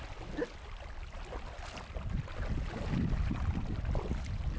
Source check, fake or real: real